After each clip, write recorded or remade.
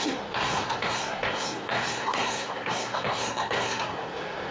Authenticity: remade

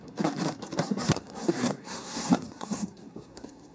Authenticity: remade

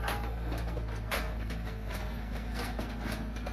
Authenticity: remade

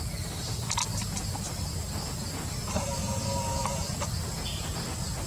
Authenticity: recorded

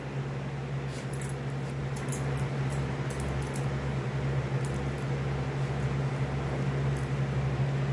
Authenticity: recorded